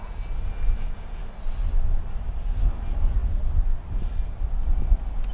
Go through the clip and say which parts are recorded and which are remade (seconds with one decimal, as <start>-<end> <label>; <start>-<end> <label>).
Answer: 0.0-5.3 recorded